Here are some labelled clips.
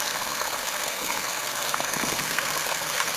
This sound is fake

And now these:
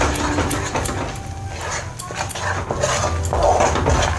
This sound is real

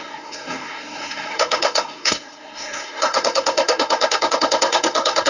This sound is fake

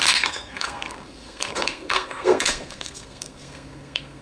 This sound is fake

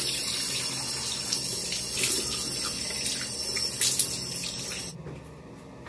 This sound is real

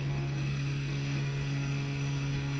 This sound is fake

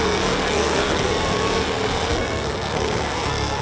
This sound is fake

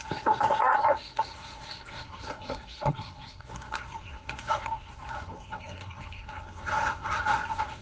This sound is fake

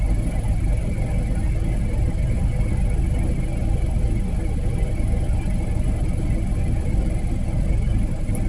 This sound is real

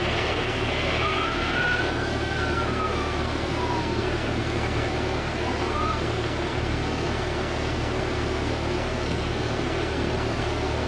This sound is fake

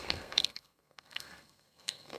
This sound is fake